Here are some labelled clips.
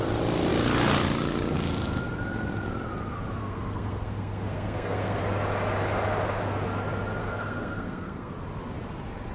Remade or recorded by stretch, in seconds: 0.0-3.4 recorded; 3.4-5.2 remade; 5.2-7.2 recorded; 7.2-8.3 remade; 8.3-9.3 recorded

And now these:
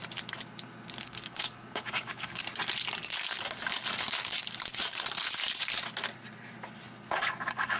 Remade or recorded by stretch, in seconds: 0.0-1.0 recorded; 1.0-2.4 remade; 2.4-7.1 recorded; 7.1-7.8 remade

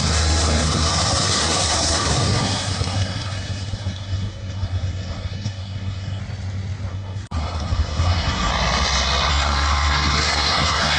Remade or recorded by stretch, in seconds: 0.0-6.2 remade; 6.2-6.9 recorded; 6.9-8.5 remade; 8.5-9.3 recorded; 9.3-11.0 remade

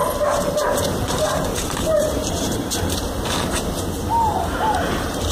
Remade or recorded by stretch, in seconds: 0.0-3.2 remade; 3.2-5.3 recorded

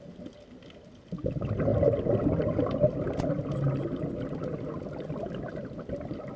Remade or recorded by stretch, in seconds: 0.0-6.4 recorded